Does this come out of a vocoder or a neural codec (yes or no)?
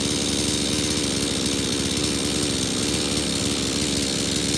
no